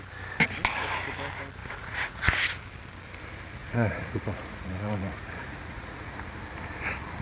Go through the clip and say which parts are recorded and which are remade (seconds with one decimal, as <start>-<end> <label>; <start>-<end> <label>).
0.0-1.6 recorded; 1.6-2.3 remade; 2.3-3.6 recorded; 3.6-6.2 remade; 6.2-7.2 recorded

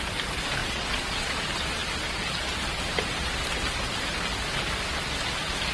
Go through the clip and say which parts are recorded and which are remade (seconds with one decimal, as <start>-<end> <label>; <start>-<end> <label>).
0.0-0.6 recorded; 0.6-1.4 remade; 1.4-5.7 recorded

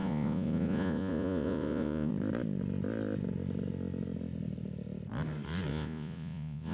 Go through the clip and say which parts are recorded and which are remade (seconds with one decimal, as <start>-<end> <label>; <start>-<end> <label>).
0.0-2.1 remade; 2.1-5.7 recorded; 5.7-6.7 remade

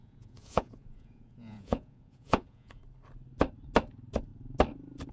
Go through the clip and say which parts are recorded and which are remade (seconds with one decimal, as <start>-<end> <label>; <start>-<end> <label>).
0.0-2.8 remade; 2.8-5.1 recorded

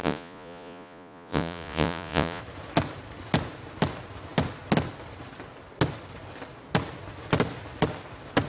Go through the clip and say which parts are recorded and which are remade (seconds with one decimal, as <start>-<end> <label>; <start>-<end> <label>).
0.0-2.4 remade; 2.4-8.5 recorded

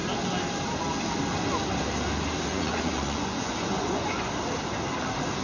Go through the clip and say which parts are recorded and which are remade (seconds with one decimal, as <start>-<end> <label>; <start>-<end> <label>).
0.0-2.5 recorded; 2.5-4.3 remade; 4.3-5.4 recorded